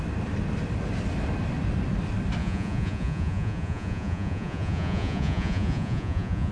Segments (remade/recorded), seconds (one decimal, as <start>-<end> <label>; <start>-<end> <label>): 0.0-2.4 recorded; 2.4-6.5 remade